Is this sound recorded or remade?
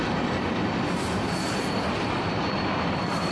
recorded